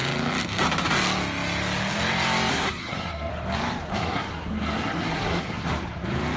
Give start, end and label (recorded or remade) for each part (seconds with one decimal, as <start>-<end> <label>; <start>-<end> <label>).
0.0-2.5 recorded; 2.5-3.3 remade; 3.3-3.9 recorded; 3.9-5.7 remade; 5.7-6.4 recorded